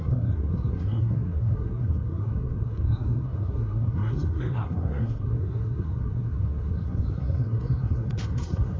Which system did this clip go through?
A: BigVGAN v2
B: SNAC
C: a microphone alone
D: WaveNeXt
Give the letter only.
B